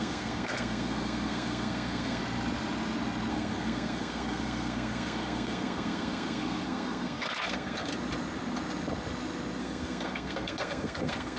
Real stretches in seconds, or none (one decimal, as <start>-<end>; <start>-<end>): 2.2-3.3; 7.9-9.6